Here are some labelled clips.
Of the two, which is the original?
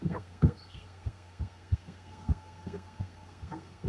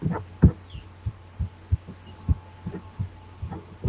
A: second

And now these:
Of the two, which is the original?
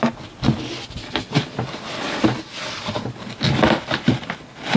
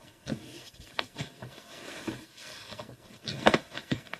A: first